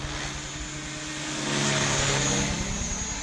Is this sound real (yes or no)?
yes